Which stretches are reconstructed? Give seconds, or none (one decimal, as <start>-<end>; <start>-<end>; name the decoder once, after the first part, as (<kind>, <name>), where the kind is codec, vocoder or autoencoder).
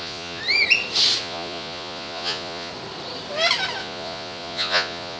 0.0-0.4 (vocoder, Vocos); 1.2-2.7; 3.8-5.2